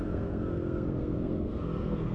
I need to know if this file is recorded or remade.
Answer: remade